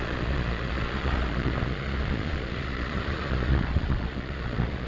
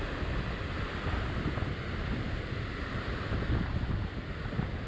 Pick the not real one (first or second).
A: first